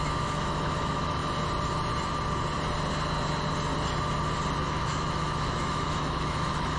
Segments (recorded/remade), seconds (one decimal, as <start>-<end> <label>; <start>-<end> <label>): 0.0-1.2 remade; 1.2-4.6 recorded; 4.6-6.8 remade